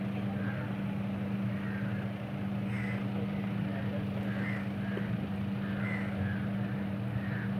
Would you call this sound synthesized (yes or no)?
no